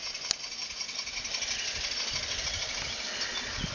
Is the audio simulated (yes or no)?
no